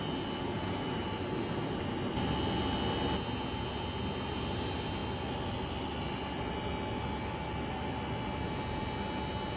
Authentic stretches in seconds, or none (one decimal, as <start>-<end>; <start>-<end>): 0.0-9.6